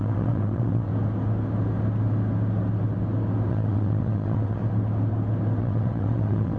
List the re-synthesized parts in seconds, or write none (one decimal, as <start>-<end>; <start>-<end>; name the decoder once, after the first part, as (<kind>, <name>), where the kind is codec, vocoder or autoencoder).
0.0-0.9 (vocoder, WaveNeXt); 3.5-4.6; 5.6-6.6